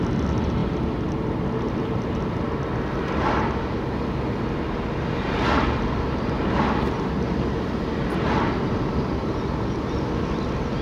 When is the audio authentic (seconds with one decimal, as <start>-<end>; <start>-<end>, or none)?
0.0-10.8